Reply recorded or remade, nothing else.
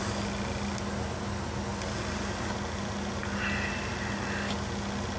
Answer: recorded